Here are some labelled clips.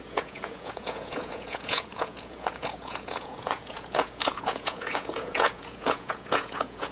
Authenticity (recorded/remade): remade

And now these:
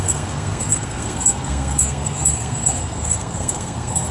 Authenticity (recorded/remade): remade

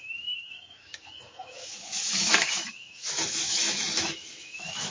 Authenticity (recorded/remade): remade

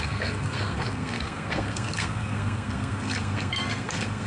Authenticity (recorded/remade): remade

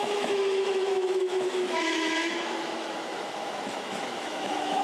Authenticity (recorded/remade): remade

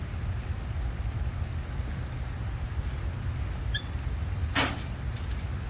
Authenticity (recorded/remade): recorded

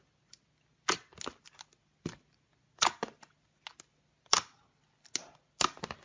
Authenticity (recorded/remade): recorded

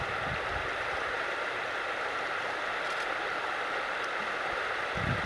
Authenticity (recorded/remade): recorded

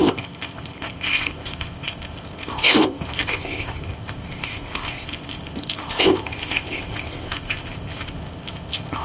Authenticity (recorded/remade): remade